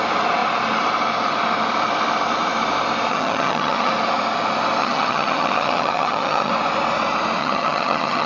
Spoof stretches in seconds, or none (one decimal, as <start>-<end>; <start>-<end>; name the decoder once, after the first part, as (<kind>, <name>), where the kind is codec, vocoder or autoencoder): 3.1-3.9 (vocoder, HiFi-GAN); 4.8-6.5; 7.4-8.3